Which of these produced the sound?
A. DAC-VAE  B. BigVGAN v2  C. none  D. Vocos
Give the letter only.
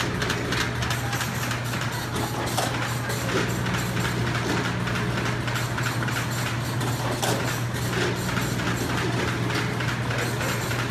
C